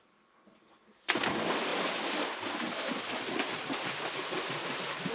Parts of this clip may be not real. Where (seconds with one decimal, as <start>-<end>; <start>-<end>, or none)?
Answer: none